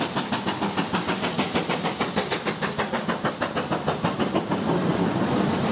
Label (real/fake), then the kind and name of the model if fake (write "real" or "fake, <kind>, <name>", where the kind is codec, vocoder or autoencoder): real